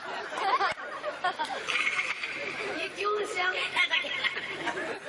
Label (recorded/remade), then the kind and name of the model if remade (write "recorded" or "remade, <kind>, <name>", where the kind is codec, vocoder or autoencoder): remade, vocoder, BigVGAN v2